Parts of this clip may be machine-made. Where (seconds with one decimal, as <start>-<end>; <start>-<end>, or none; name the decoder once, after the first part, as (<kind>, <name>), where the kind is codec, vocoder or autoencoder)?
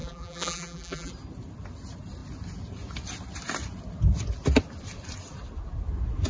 0.0-1.1 (vocoder, BigVGAN v2)